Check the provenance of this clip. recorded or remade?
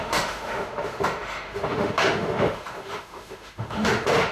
remade